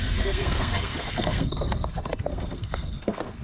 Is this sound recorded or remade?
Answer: remade